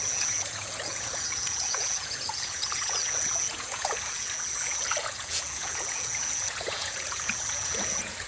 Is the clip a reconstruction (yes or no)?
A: yes